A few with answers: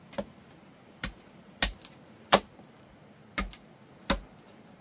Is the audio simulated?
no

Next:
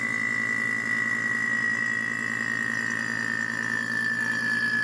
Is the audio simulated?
no